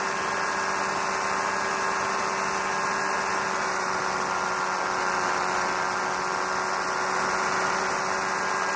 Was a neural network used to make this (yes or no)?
no